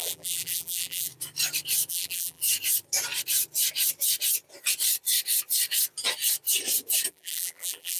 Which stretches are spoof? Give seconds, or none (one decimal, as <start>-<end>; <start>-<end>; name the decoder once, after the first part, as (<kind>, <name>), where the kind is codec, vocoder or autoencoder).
0.0-1.1 (vocoder, BigVGAN v2); 1.9-2.4; 7.1-8.0